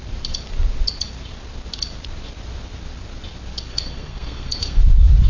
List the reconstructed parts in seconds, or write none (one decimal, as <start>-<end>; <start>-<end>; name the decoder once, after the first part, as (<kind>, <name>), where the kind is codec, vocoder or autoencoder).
3.7-4.8 (codec, SNAC)

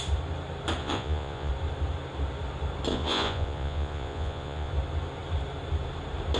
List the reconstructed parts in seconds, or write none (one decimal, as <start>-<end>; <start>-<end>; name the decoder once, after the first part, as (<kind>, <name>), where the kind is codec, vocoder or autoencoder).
0.8-1.5 (vocoder, Vocos); 2.9-4.7

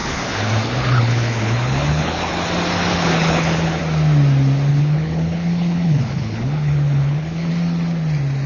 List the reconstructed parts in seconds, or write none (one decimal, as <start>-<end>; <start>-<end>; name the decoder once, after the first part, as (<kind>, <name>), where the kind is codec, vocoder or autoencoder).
0.0-2.3 (codec, HILCodec); 2.9-3.8; 4.7-7.5

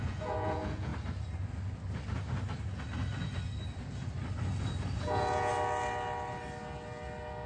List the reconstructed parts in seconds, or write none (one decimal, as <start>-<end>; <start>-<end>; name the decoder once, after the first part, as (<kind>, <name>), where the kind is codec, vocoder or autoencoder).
0.0-0.9 (vocoder, Vocos); 5.0-5.5

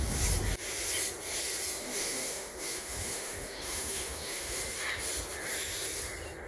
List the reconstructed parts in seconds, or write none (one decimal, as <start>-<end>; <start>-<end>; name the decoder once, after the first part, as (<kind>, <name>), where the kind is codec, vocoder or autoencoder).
1.8-4.6 (autoencoder, DAC-VAE)

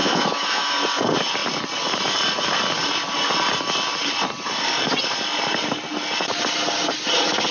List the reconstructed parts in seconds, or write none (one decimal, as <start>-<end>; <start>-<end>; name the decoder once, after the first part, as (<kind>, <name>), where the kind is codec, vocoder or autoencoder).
0.0-0.7 (autoencoder, DAC-VAE)

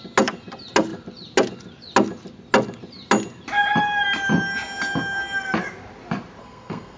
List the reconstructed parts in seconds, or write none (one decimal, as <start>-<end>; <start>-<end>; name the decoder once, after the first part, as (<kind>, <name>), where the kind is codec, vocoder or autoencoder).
6.4-7.0 (codec, SNAC)